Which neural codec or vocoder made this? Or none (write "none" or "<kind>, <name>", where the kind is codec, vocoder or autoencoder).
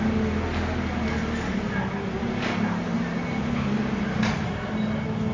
none